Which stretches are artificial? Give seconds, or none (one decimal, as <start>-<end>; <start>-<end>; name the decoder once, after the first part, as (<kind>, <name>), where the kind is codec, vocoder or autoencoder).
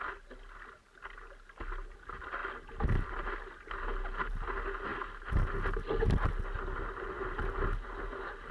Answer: none